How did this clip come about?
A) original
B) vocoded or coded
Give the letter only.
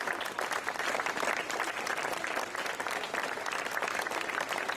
A